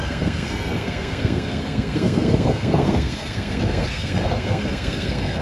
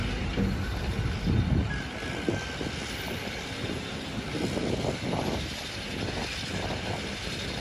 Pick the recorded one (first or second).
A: second